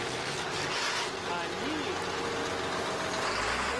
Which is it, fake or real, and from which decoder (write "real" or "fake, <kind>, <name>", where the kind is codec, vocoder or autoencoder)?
real